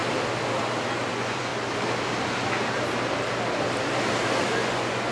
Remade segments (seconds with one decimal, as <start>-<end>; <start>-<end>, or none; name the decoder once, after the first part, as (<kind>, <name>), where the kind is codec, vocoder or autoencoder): 1.1-1.5 (vocoder, Vocos); 4.6-5.1